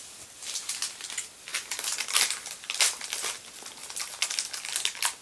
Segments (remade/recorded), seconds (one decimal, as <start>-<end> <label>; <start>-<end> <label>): 0.0-5.2 recorded